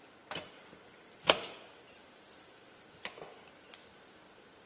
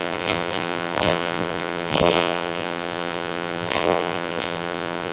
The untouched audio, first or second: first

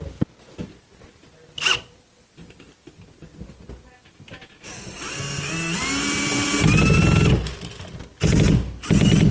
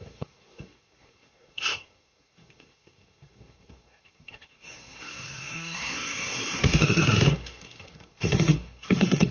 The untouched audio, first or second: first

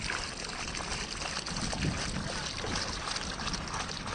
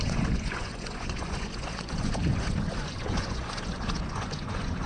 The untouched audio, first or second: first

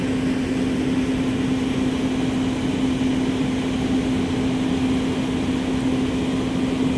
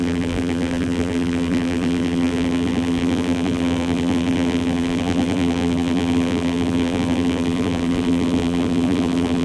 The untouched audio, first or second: first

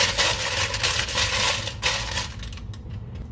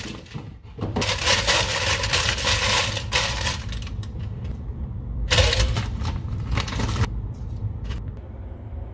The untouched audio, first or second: first